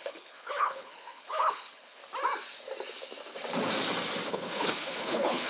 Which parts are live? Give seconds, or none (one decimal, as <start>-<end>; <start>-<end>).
2.0-4.3